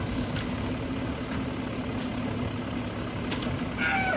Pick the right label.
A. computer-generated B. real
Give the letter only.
B